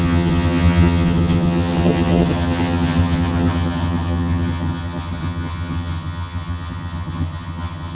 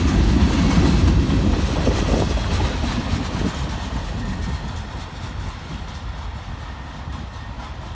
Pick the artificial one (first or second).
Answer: first